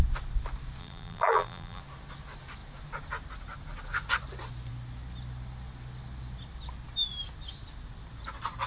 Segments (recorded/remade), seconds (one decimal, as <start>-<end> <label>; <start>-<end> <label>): 0.0-0.8 recorded; 0.8-1.8 remade; 1.8-8.7 recorded